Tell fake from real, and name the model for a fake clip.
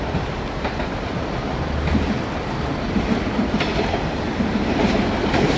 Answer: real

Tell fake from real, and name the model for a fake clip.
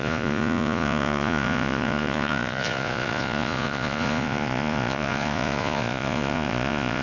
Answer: fake, vocoder, Vocos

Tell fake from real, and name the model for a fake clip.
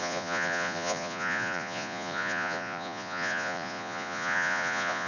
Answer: fake, vocoder, Vocos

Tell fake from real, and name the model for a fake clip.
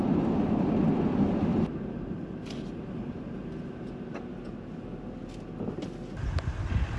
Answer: real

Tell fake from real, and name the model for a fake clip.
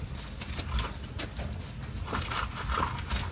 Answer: real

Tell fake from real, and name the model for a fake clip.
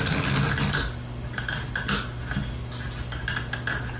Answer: real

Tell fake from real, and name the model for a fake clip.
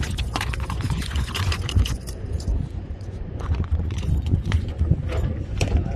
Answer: fake, vocoder, Vocos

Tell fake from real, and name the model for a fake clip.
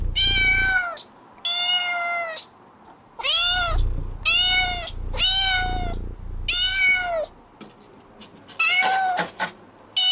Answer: real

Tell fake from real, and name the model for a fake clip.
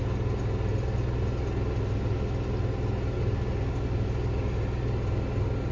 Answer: real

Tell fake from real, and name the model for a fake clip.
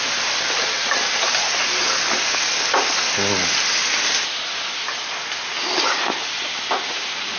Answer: real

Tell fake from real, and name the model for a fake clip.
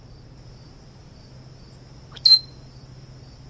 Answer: real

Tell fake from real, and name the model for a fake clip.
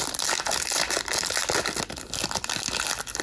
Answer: real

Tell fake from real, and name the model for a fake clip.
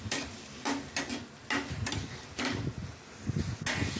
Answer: real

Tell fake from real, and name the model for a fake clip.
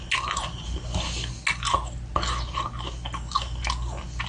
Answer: real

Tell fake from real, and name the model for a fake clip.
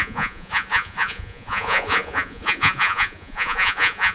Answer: fake, vocoder, Vocos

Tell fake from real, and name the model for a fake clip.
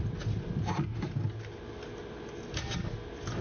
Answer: real